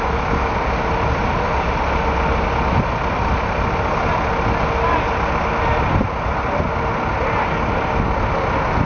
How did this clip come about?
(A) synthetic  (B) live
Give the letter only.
B